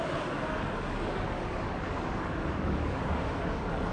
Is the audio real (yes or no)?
no